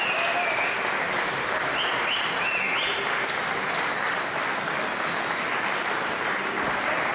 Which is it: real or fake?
real